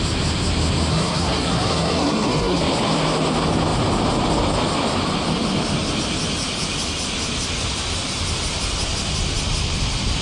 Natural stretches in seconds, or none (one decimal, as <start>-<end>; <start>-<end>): 0.0-0.9; 2.6-10.2